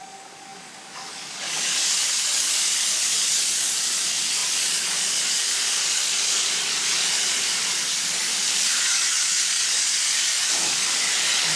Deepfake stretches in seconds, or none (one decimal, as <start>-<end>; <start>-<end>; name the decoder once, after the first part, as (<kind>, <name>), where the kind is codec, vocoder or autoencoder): 0.0-11.6 (codec, DAC)